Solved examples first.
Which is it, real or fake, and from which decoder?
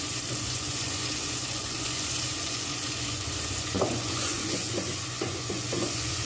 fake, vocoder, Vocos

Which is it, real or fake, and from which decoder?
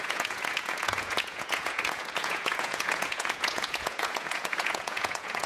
fake, vocoder, Vocos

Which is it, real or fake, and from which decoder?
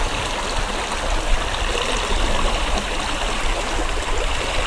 real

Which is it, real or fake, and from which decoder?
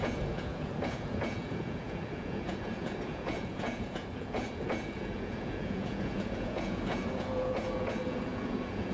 fake, vocoder, Vocos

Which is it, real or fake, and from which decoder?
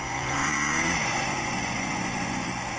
fake, vocoder, Vocos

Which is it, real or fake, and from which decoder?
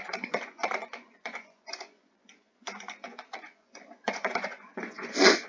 fake, vocoder, Vocos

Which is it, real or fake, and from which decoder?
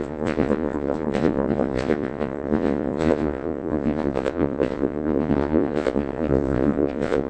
fake, vocoder, Vocos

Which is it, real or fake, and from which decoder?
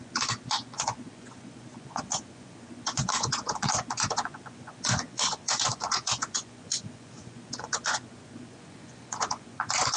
fake, vocoder, Vocos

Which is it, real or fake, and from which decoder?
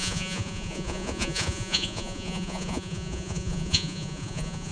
fake, vocoder, Vocos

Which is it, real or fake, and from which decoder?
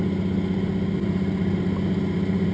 real